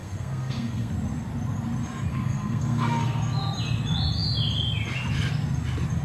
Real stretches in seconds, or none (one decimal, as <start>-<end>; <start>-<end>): 0.9-2.1; 3.2-6.0